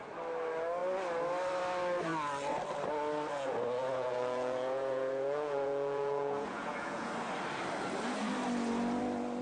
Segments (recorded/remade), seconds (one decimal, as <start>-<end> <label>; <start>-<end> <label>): 0.0-3.8 recorded; 3.8-7.1 remade; 7.1-9.4 recorded